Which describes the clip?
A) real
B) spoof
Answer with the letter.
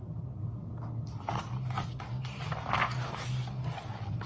A